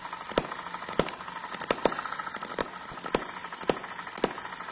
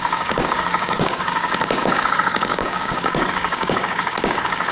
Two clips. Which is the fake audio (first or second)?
second